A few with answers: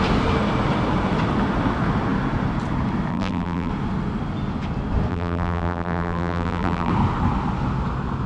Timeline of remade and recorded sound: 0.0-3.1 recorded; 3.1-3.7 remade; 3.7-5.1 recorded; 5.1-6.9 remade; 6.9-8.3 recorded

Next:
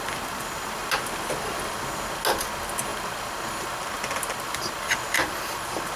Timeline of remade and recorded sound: 0.0-6.0 recorded